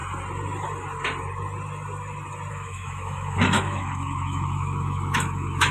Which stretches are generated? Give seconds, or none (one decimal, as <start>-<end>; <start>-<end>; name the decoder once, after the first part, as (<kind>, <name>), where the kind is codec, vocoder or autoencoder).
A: 2.5-5.7 (autoencoder, DAC-VAE)